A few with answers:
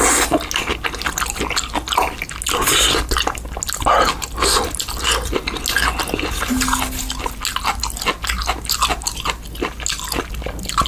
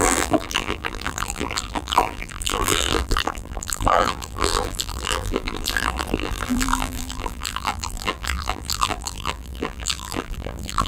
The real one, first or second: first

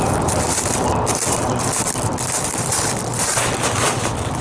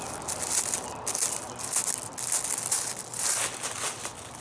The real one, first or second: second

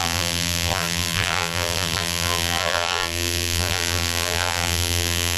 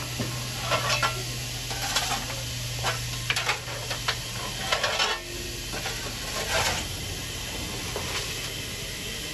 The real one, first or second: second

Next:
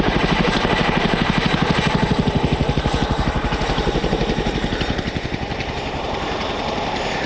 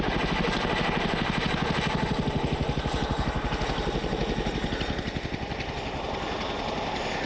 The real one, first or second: second